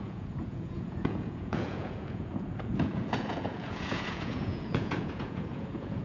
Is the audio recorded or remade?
remade